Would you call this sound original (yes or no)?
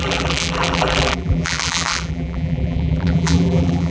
no